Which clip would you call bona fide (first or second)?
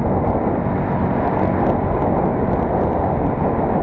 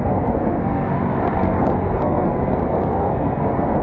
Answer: first